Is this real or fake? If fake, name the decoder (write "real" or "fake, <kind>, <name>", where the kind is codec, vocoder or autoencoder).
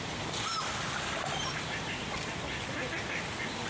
real